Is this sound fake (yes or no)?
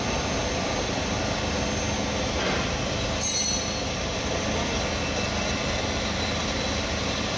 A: no